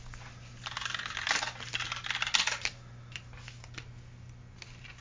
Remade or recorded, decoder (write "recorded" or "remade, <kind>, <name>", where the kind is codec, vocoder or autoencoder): recorded